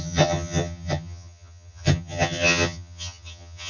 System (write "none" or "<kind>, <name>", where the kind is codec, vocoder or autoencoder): vocoder, HiFi-GAN